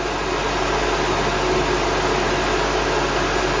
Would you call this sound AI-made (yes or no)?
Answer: no